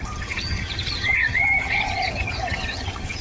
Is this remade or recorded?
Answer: remade